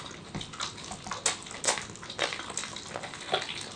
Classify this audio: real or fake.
real